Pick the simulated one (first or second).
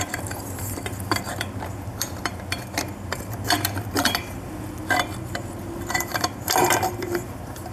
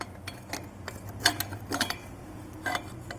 first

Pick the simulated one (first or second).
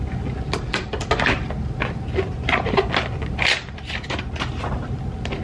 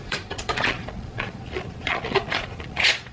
second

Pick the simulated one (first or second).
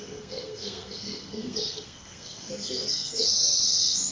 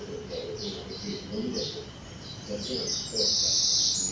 first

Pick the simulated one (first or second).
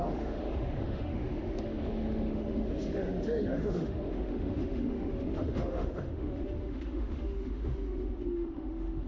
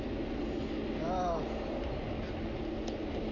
first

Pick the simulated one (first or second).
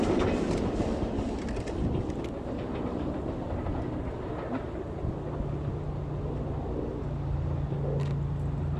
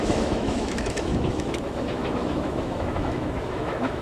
second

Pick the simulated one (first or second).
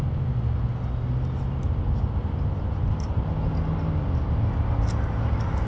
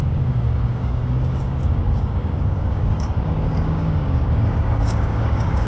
second